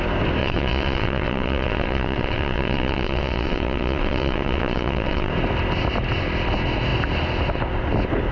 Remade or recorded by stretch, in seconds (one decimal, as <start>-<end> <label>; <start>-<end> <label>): 0.0-0.4 recorded; 0.4-5.3 remade; 5.3-8.3 recorded